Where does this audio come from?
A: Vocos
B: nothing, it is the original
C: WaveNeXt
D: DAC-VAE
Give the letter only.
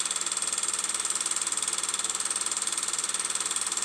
B